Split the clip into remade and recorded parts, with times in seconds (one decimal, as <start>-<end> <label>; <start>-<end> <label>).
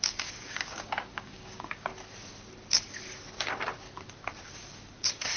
0.0-1.9 remade; 1.9-4.5 recorded; 4.5-5.4 remade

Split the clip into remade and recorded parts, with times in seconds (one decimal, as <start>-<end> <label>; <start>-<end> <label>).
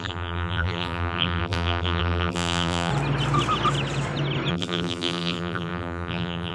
0.0-2.9 remade; 2.9-4.5 recorded; 4.5-6.5 remade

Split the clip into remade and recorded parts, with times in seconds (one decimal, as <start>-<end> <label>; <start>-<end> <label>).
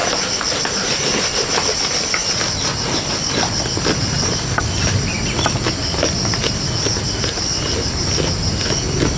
0.0-9.2 recorded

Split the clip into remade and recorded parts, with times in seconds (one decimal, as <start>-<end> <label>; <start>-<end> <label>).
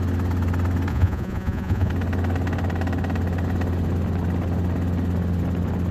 0.0-0.9 recorded; 0.9-1.9 remade; 1.9-5.9 recorded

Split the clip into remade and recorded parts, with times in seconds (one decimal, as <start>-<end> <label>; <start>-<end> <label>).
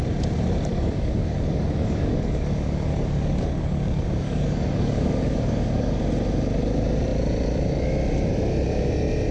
0.0-0.7 recorded; 0.7-6.0 remade; 6.0-9.3 recorded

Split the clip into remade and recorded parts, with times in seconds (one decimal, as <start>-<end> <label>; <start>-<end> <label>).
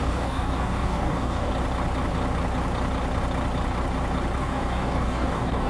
0.0-1.5 remade; 1.5-4.4 recorded; 4.4-5.7 remade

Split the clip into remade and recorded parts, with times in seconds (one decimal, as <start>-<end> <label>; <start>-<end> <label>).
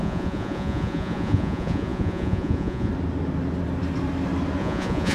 0.0-2.9 remade; 2.9-4.6 recorded; 4.6-5.1 remade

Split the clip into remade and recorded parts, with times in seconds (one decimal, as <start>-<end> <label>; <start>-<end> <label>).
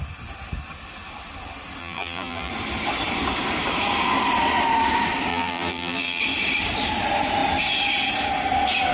0.0-1.8 recorded; 1.8-2.5 remade; 2.5-5.3 recorded; 5.3-6.2 remade; 6.2-8.9 recorded